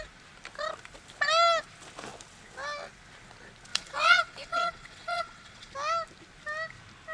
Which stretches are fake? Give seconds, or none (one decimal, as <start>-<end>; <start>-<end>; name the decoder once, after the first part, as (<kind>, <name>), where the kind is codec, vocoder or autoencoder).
3.7-5.7 (vocoder, WaveNeXt)